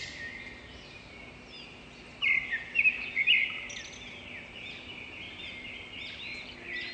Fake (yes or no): no